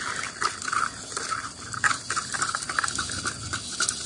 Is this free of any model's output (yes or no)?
yes